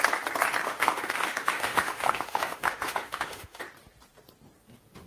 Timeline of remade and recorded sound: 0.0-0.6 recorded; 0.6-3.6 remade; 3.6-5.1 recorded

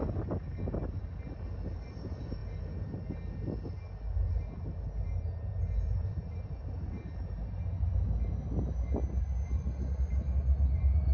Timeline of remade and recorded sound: 0.0-11.1 recorded

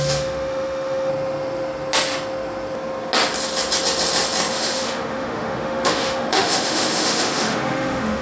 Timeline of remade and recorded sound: 0.0-1.1 remade; 1.1-4.5 recorded; 4.5-8.2 remade

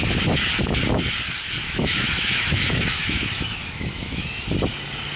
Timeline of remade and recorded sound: 0.0-1.6 recorded; 1.6-4.2 remade; 4.2-5.2 recorded

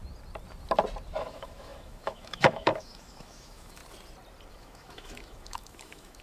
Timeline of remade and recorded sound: 0.0-1.2 recorded; 1.2-3.8 remade; 3.8-4.5 recorded; 4.5-6.2 remade

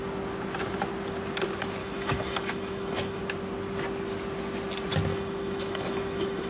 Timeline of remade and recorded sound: 0.0-1.8 recorded; 1.8-3.2 remade; 3.2-5.1 recorded; 5.1-6.5 remade